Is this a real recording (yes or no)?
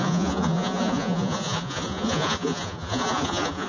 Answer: no